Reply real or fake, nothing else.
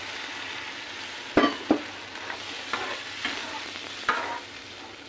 real